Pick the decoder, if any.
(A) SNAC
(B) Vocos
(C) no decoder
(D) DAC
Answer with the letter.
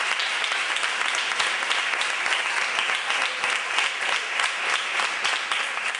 C